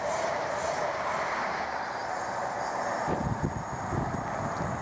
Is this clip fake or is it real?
real